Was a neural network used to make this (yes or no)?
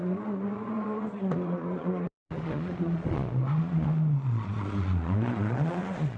yes